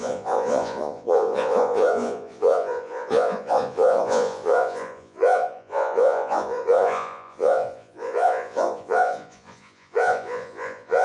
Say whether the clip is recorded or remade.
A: remade